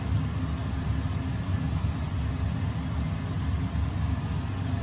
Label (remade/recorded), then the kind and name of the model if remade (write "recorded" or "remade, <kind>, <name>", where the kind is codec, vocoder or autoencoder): recorded